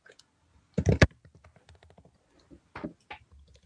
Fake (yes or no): no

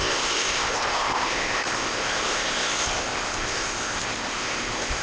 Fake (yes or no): yes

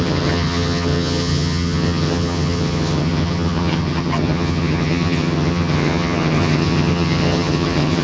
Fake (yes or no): yes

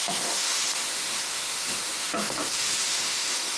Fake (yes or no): yes